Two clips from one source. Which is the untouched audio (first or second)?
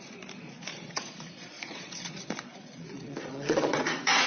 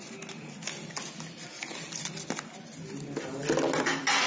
second